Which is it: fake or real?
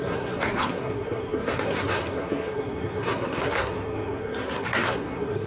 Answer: fake